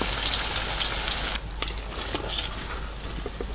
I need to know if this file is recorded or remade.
recorded